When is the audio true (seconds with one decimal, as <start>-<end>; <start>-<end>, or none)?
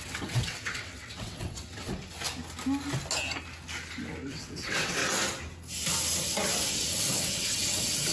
1.9-4.3; 5.0-6.7